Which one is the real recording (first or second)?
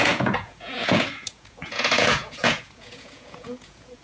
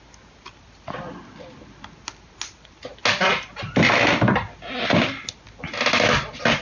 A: second